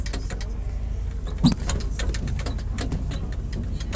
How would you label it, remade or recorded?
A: recorded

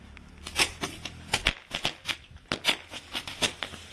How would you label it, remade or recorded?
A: recorded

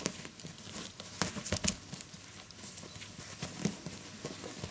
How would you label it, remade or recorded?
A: recorded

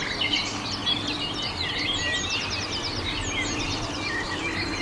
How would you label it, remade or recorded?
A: recorded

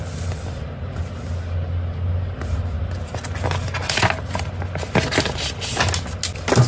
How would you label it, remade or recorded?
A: recorded